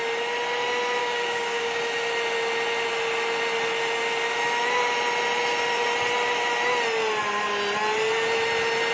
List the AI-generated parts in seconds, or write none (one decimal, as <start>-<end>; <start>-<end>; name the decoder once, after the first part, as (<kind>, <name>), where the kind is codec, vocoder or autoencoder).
1.0-1.8 (codec, DAC)

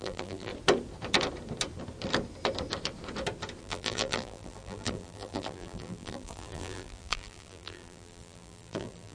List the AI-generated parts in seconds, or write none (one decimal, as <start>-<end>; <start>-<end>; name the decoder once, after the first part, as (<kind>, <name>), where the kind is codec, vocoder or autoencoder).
0.0-0.5 (vocoder, BigVGAN v2); 3.6-9.1

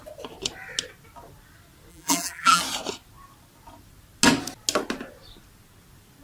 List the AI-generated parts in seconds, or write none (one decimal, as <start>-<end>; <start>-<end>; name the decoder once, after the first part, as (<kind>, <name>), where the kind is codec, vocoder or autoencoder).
1.9-2.6 (vocoder, BigVGAN v2)